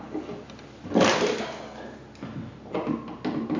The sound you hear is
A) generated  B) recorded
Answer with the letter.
B